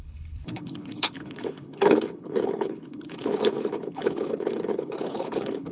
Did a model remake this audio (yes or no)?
yes